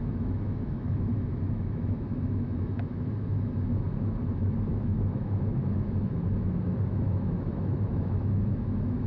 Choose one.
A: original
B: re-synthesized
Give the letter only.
B